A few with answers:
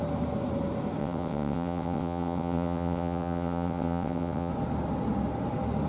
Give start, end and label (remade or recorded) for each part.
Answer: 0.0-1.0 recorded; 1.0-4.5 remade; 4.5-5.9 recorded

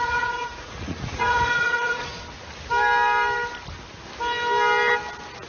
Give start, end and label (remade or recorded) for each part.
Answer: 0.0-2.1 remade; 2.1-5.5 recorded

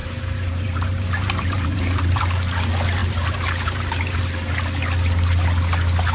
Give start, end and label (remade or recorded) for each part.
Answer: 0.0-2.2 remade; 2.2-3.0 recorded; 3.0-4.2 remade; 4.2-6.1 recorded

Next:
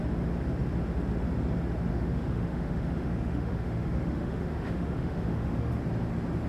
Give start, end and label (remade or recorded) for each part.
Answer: 0.0-1.9 recorded; 1.9-5.8 remade; 5.8-6.5 recorded

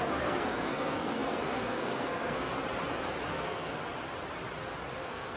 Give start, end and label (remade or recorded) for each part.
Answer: 0.0-2.5 remade; 2.5-3.3 recorded; 3.3-3.8 remade; 3.8-4.9 recorded; 4.9-5.4 remade

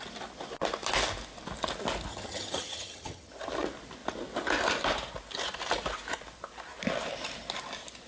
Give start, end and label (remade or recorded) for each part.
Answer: 0.0-2.1 recorded; 2.1-3.3 remade; 3.3-8.1 recorded

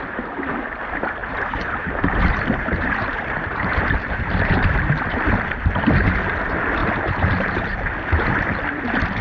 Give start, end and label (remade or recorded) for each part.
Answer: 0.0-1.2 recorded; 1.2-6.2 remade; 6.2-6.8 recorded; 6.8-7.9 remade; 7.9-9.2 recorded

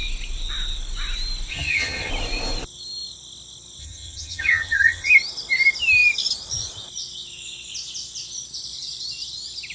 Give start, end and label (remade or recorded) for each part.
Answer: 0.0-1.5 recorded; 1.5-2.1 remade; 2.1-3.8 recorded; 3.8-5.1 remade; 5.1-9.7 recorded